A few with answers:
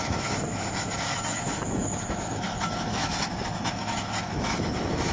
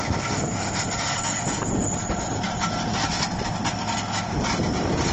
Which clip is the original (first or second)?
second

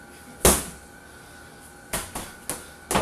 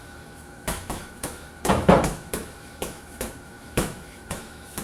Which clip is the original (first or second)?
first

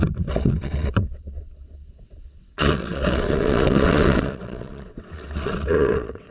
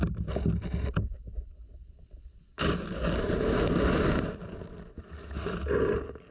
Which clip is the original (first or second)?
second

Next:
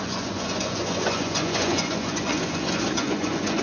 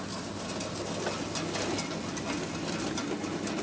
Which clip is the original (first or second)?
second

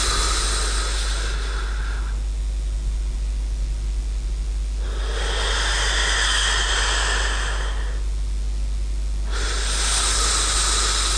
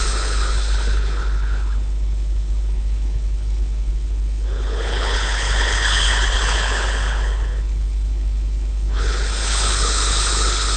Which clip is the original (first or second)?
first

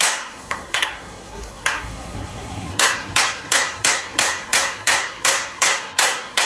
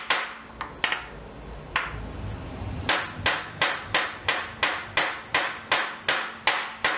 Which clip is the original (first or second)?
second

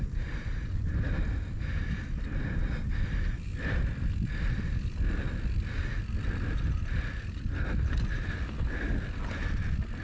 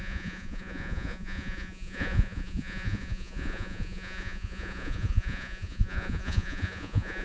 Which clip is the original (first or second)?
first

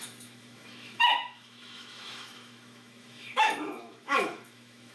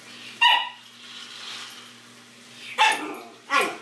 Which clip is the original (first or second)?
second